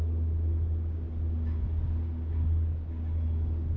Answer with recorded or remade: recorded